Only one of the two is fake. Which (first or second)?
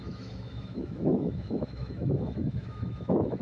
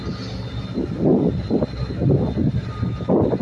first